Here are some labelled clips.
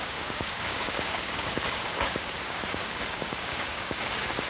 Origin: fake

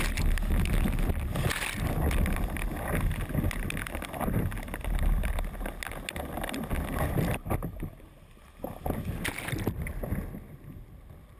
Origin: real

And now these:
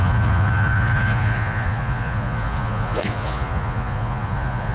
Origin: fake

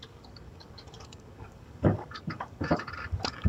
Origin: fake